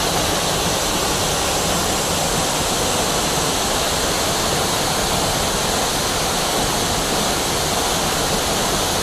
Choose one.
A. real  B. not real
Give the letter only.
A